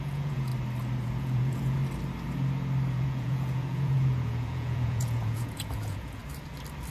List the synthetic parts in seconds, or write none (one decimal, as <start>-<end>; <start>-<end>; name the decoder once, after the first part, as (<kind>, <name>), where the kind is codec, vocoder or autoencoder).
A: 0.0-0.5 (vocoder, Vocos); 1.0-1.8; 2.9-6.2

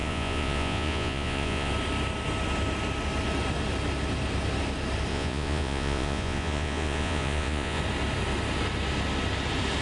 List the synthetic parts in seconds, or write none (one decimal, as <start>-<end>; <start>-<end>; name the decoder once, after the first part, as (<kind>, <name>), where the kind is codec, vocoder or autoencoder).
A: 0.0-1.7 (vocoder, Vocos); 5.1-7.8

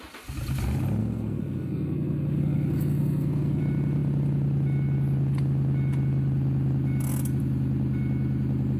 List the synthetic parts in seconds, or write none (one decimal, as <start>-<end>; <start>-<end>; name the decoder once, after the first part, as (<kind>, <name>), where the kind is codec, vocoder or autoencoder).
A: 1.0-3.6 (codec, SNAC)

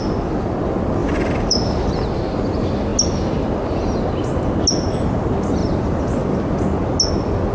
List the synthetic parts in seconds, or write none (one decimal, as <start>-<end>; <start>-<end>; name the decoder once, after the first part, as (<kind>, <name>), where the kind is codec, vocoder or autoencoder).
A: 1.0-1.9 (vocoder, BigVGAN v2)

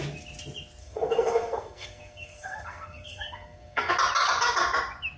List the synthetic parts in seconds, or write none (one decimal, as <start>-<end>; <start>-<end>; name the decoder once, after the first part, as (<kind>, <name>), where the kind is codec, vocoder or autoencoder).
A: 0.8-3.9 (codec, SNAC)

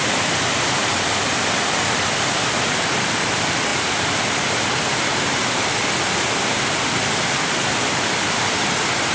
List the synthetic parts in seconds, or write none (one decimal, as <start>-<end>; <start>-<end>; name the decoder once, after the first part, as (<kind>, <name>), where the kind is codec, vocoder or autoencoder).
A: none

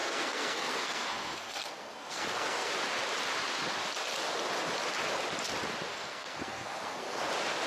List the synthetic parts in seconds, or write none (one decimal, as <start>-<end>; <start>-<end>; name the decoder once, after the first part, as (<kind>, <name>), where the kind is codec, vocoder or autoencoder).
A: 0.0-2.7 (codec, SNAC); 5.9-7.3